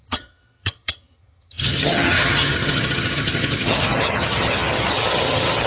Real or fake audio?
fake